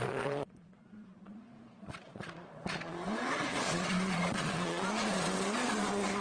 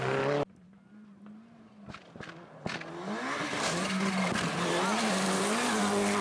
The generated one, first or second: first